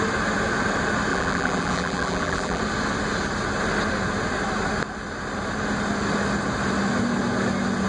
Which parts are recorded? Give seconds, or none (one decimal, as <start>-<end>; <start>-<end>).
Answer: 0.0-1.1; 2.6-7.9